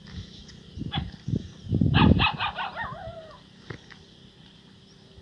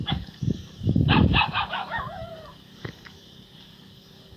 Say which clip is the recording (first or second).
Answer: first